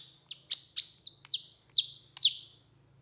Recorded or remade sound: recorded